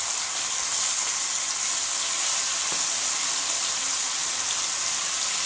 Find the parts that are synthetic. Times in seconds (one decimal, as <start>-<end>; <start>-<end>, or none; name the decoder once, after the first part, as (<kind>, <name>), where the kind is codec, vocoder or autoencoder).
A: none